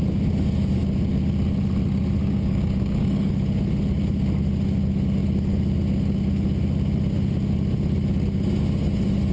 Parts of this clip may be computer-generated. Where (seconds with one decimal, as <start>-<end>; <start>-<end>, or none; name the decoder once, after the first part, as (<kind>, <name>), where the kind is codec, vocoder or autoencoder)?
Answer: 2.2-3.3 (codec, DAC)